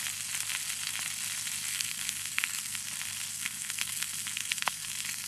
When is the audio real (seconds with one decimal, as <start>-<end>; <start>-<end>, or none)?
0.0-1.7; 2.8-3.3